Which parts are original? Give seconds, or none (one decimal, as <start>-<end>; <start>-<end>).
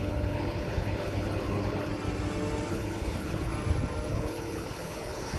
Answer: 1.9-2.7; 3.5-4.1